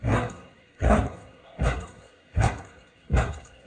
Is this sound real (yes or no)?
no